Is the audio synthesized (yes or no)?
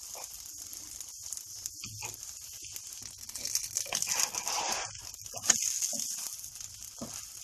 no